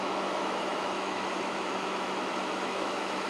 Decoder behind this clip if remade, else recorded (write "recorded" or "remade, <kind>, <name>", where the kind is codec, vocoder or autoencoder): remade, autoencoder, DAC-VAE